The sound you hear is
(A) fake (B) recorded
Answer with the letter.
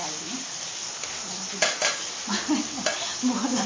B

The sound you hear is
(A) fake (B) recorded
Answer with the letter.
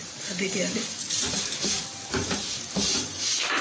B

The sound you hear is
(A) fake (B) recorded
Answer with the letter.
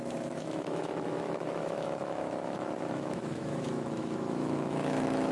A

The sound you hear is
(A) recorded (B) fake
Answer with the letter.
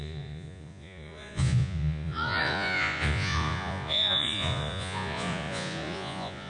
B